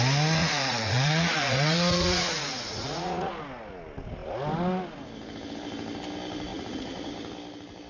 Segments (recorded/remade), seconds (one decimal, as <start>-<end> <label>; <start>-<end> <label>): 0.0-0.4 recorded; 0.4-3.3 remade; 3.3-6.5 recorded; 6.5-7.1 remade; 7.1-7.9 recorded